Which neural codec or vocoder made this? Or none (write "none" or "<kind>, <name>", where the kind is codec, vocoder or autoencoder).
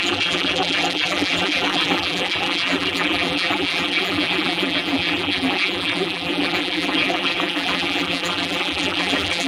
vocoder, BigVGAN v2